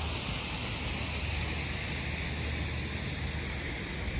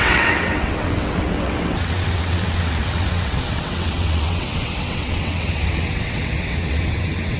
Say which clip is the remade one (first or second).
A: second